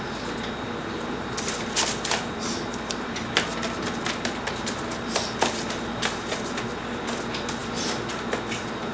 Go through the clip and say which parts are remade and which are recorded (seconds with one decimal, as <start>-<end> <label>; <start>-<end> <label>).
0.0-8.9 recorded